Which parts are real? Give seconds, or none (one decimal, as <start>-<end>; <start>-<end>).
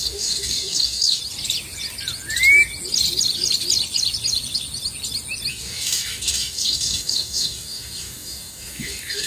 1.2-5.5